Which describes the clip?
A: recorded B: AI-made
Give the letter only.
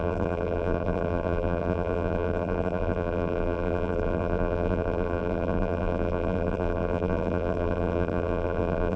B